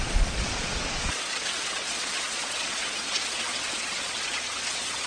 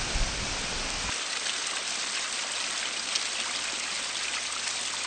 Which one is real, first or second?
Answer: second